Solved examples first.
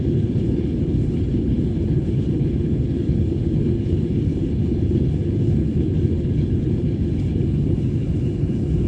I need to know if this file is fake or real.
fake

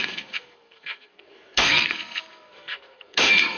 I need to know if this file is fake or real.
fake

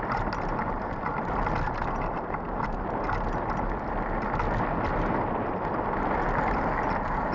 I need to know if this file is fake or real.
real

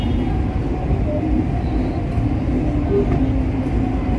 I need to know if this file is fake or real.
real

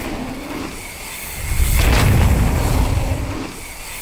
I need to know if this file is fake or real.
real